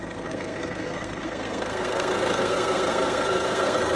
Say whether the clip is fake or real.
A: fake